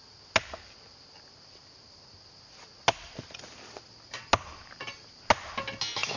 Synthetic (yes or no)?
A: no